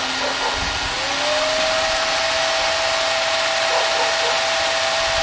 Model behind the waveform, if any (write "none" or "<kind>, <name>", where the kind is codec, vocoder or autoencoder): none